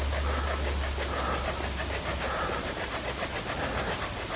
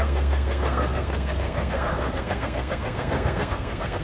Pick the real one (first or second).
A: first